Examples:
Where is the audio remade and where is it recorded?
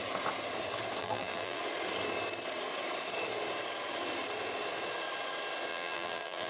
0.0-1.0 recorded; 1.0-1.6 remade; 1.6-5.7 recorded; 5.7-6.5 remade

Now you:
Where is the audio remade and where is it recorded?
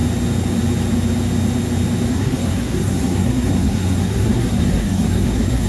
0.0-2.1 recorded; 2.1-5.7 remade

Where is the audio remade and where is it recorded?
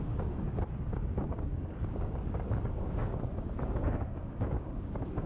0.0-5.3 remade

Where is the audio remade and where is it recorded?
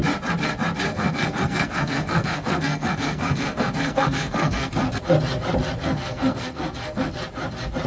0.0-0.9 recorded; 0.9-4.7 remade; 4.7-5.8 recorded; 5.8-7.1 remade; 7.1-7.9 recorded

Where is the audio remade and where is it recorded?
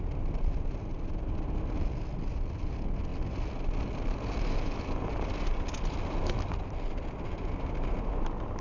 0.0-8.6 recorded